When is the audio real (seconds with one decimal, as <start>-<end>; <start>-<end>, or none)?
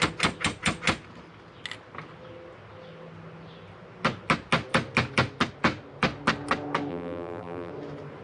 0.0-6.9; 7.7-8.2